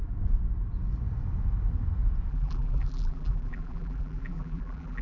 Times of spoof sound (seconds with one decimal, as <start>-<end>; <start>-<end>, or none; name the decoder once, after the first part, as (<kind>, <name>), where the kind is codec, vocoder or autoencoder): 2.3-5.0 (vocoder, BigVGAN v2)